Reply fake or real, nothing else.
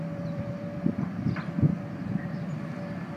fake